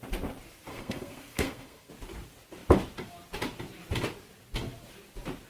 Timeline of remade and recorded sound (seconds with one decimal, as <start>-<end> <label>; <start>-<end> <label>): 0.0-0.7 recorded; 0.7-1.9 remade; 1.9-5.5 recorded